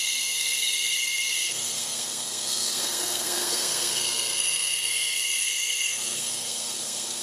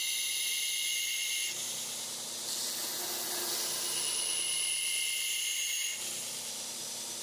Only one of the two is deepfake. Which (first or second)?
first